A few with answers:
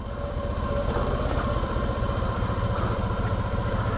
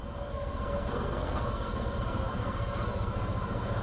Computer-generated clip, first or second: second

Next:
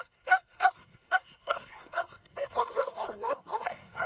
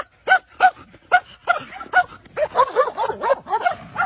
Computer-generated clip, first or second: first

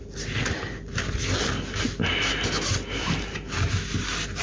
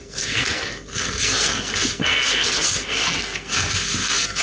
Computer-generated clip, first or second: second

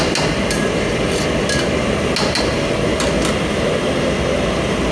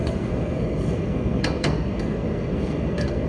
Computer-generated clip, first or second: second